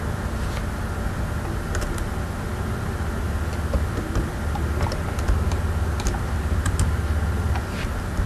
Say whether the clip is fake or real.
real